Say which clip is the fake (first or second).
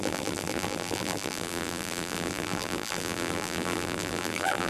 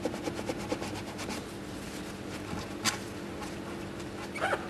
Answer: first